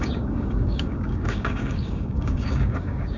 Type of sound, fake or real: fake